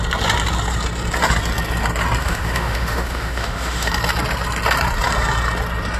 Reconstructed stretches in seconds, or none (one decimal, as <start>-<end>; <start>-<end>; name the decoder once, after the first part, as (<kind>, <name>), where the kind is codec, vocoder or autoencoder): 2.2-3.9 (autoencoder, DAC-VAE)